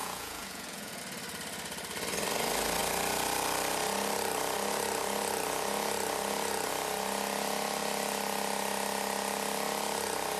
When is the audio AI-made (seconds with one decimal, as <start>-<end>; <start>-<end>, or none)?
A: 0.0-1.0